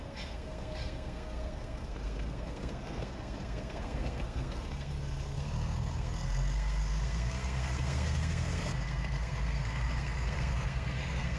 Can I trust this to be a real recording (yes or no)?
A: no